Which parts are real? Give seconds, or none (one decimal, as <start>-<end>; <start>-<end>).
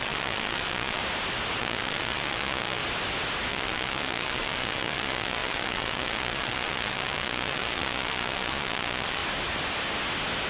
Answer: 1.0-1.6; 2.8-3.5; 9.2-10.5